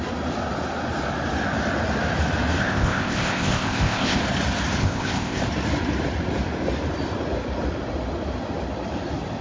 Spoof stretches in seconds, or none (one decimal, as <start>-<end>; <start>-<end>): 2.6-4.2; 4.8-5.4